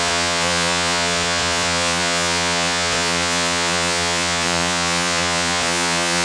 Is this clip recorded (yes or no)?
no